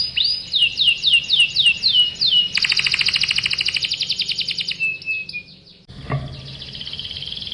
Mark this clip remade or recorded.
recorded